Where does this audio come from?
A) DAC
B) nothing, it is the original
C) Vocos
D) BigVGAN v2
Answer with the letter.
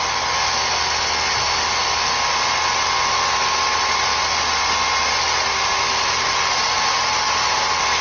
B